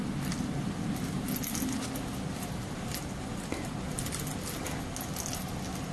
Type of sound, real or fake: real